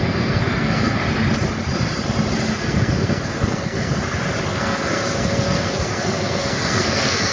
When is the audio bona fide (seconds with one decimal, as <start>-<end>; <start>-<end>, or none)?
1.0-2.6; 4.0-4.5